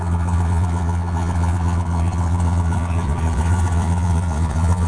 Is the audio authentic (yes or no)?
no